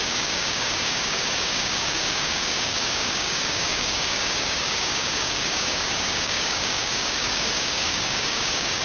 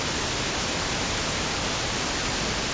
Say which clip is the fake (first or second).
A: first